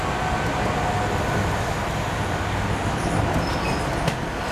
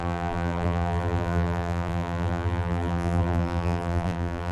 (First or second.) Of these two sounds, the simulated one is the second